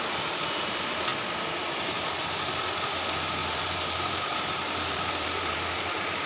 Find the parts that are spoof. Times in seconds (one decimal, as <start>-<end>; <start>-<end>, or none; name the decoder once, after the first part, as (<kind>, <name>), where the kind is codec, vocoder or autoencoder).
3.4-5.6 (vocoder, BigVGAN v2)